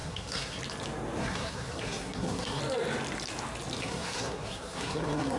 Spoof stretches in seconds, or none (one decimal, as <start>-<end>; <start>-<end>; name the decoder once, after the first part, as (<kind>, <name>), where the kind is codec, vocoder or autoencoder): 0.0-0.6 (codec, SNAC); 1.2-2.6; 3.8-5.4